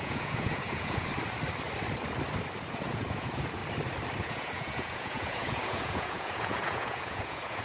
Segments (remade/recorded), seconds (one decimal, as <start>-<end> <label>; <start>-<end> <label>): 0.0-1.1 remade; 1.1-2.7 recorded; 2.7-3.6 remade; 3.6-4.2 recorded; 4.2-7.6 remade